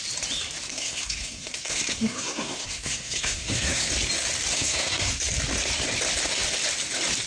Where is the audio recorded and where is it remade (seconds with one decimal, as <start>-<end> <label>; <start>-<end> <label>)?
0.0-0.7 recorded; 0.7-3.9 remade; 3.9-4.5 recorded; 4.5-5.1 remade; 5.1-7.3 recorded